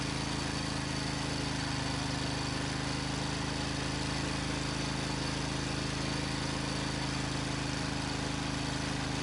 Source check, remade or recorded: recorded